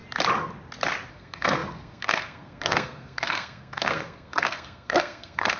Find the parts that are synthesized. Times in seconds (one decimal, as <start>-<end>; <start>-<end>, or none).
1.1-5.6